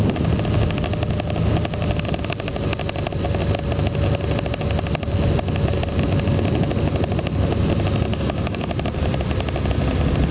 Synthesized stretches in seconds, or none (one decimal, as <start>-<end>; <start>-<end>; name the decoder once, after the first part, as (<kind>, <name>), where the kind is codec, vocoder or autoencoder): 8.1-8.7 (codec, DAC)